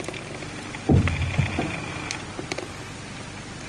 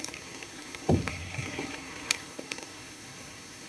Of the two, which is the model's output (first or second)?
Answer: second